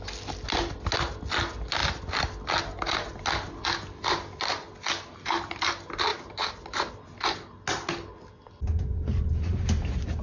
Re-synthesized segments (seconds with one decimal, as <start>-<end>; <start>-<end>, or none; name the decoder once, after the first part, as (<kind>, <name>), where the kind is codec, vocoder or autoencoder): 6.1-6.9 (vocoder, BigVGAN v2)